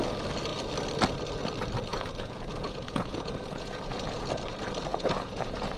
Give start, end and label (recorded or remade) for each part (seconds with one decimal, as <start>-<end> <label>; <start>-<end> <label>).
0.0-1.9 recorded; 1.9-4.3 remade; 4.3-4.9 recorded; 4.9-5.8 remade